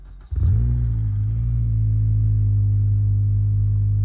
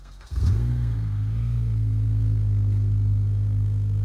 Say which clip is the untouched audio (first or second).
first